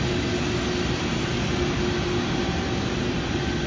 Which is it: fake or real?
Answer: real